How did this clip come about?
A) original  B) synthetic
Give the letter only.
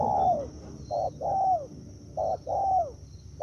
A